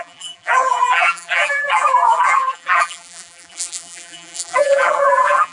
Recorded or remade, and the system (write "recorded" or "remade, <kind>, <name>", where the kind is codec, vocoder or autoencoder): remade, vocoder, BigVGAN v2